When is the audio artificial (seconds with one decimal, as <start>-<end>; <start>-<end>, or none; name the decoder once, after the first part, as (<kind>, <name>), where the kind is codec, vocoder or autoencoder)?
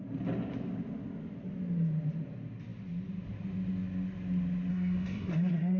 4.7-5.8 (codec, SNAC)